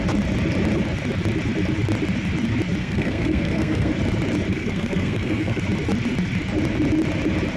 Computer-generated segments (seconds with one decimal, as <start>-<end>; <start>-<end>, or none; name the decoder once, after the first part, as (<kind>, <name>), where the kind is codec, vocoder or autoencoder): 2.8-3.9 (codec, SNAC); 4.5-5.6